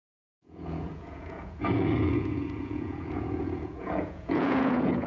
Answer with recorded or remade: remade